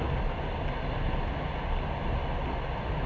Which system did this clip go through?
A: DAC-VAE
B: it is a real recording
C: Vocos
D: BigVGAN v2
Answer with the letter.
B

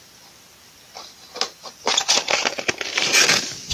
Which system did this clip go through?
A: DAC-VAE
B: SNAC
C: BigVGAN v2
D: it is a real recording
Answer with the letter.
D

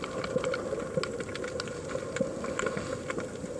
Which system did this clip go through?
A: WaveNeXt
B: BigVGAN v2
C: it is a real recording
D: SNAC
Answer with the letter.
C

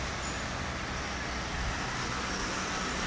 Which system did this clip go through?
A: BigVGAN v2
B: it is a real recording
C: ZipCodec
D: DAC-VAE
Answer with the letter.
B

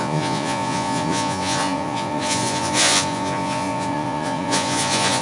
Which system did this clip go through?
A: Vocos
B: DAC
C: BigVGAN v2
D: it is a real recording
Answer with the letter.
A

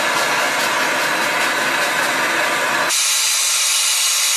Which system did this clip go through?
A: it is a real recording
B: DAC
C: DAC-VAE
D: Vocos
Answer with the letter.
A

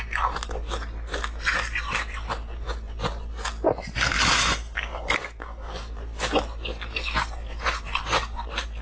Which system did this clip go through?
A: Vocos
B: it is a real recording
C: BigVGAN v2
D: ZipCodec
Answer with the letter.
B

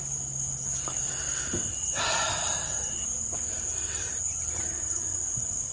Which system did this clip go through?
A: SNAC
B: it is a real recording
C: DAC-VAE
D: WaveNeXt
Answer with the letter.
B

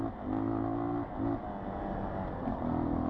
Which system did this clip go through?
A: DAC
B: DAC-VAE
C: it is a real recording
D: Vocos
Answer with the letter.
C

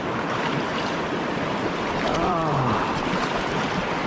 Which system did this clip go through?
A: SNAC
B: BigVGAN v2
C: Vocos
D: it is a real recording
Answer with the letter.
B